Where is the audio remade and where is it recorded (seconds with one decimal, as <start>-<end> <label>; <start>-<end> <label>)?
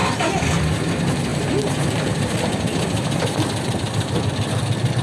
0.0-1.3 recorded; 1.3-4.3 remade; 4.3-5.0 recorded